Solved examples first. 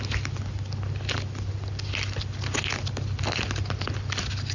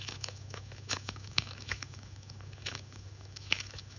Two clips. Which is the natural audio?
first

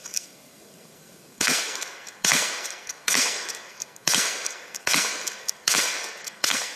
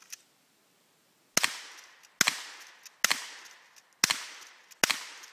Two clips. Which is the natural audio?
second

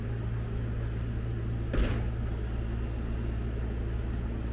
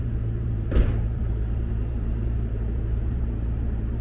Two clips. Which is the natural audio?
first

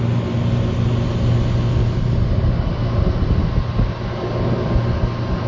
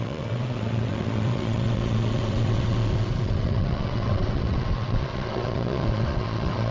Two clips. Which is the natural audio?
first